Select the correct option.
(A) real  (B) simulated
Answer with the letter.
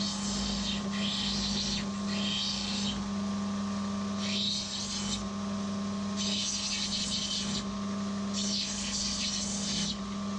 A